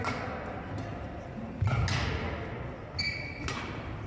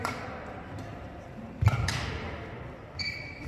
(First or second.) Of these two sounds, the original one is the first